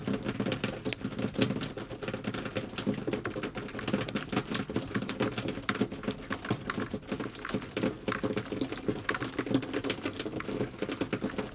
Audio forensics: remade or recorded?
recorded